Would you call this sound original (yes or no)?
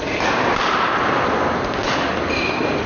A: yes